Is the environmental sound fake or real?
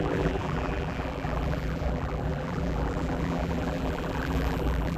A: fake